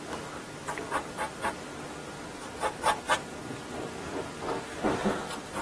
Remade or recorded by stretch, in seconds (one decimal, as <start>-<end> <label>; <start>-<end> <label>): 0.0-5.6 recorded